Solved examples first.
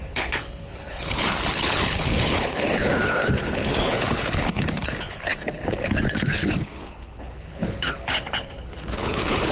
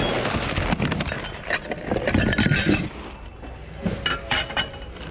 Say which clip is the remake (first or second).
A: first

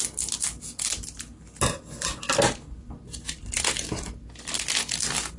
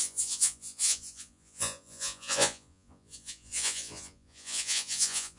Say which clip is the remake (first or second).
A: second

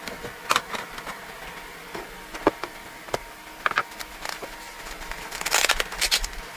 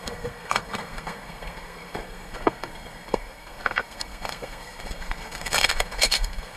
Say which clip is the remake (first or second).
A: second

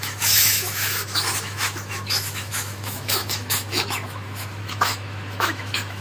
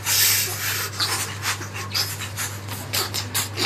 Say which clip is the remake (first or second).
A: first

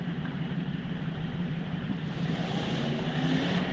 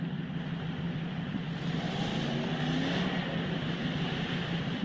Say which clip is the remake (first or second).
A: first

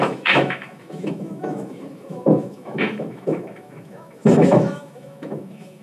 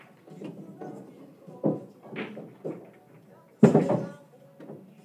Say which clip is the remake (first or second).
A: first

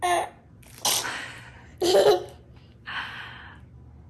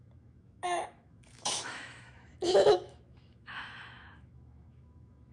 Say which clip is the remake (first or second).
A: second